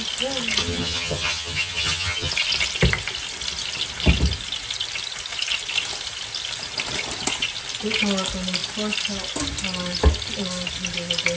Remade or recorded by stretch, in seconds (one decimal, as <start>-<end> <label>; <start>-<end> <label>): 0.0-0.6 recorded; 0.6-2.3 remade; 2.3-11.4 recorded

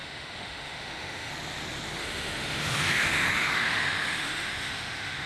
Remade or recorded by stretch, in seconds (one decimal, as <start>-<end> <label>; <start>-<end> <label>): 0.0-1.3 remade; 1.3-2.0 recorded; 2.0-5.3 remade

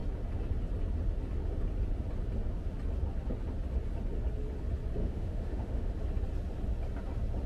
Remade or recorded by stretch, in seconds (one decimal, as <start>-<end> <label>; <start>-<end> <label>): 0.0-5.0 recorded; 5.0-5.9 remade; 5.9-7.5 recorded

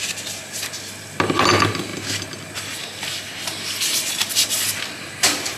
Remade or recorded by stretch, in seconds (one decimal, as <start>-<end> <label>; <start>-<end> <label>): 0.0-5.6 recorded